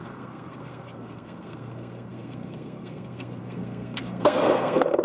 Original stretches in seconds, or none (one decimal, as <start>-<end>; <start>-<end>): none